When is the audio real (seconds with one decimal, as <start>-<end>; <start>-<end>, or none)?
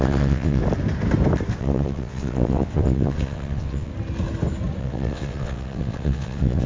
0.6-1.6; 3.9-4.8